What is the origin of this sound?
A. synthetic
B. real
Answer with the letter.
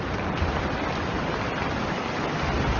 B